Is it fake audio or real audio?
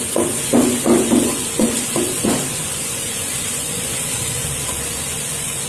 fake